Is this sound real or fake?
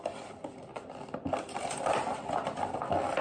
real